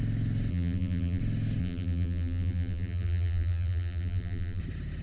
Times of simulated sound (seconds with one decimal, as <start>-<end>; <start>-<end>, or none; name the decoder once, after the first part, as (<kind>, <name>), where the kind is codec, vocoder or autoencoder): 0.5-1.2 (vocoder, BigVGAN v2); 1.6-4.6